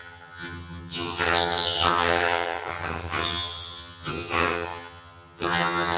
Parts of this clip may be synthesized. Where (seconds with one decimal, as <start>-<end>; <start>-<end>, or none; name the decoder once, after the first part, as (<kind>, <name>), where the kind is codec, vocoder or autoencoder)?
0.0-6.0 (vocoder, HiFi-GAN)